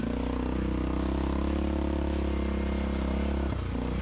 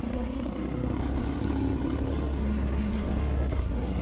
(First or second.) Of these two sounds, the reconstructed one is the second